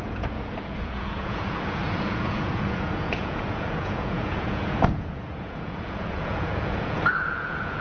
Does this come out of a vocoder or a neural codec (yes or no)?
yes